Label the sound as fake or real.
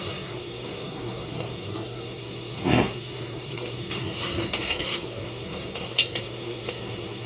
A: fake